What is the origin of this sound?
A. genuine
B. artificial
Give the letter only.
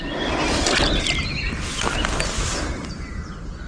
A